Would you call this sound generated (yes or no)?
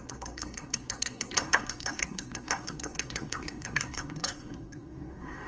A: yes